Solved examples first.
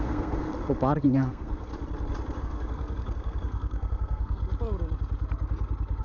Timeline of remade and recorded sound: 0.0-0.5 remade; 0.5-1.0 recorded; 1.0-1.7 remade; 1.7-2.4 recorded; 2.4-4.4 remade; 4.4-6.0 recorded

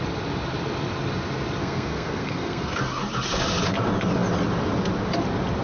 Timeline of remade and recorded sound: 0.0-1.6 recorded; 1.6-2.8 remade; 2.8-5.6 recorded

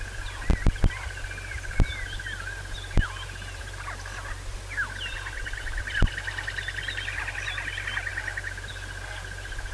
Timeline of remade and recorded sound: 0.0-9.7 recorded

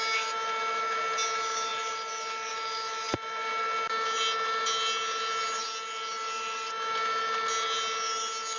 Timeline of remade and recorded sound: 0.0-8.6 recorded